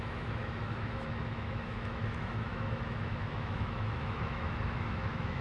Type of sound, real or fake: fake